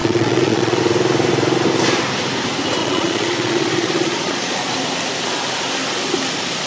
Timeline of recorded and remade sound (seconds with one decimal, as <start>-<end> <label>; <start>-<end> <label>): 0.0-0.8 remade; 0.8-2.8 recorded; 2.8-4.7 remade; 4.7-6.7 recorded